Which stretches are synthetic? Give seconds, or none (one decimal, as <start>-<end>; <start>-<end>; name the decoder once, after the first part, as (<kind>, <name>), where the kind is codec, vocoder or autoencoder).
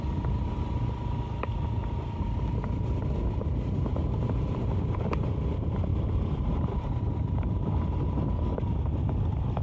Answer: 5.9-7.8 (vocoder, BigVGAN v2)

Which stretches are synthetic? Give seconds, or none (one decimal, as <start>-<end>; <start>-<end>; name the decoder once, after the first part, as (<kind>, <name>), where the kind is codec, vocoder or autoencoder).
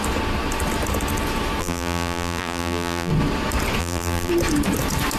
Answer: 1.6-3.1 (vocoder, BigVGAN v2); 3.8-4.3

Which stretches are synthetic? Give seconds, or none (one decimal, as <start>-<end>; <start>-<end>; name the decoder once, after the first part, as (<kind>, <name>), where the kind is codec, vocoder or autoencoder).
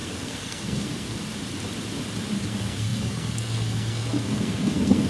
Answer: 0.0-1.2 (codec, SNAC); 2.4-5.1